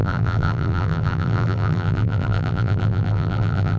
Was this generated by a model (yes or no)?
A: yes